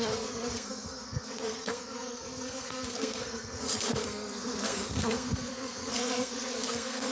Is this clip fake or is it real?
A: fake